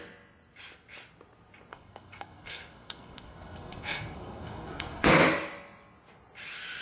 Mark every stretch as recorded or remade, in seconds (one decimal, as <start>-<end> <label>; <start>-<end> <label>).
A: 0.0-1.7 recorded; 1.7-5.1 remade; 5.1-6.8 recorded